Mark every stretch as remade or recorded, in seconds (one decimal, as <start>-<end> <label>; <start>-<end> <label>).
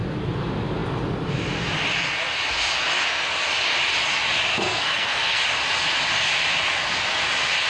0.0-4.5 recorded; 4.5-5.4 remade; 5.4-7.7 recorded